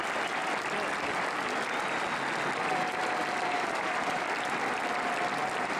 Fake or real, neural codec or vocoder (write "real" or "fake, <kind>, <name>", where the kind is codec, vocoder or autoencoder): real